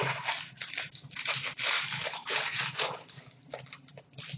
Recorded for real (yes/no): no